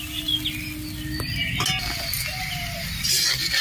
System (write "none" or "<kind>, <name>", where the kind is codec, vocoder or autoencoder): none